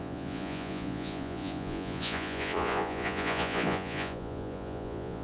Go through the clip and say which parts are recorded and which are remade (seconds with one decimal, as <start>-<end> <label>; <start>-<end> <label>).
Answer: 0.0-5.2 remade